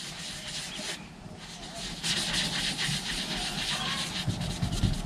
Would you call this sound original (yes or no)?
yes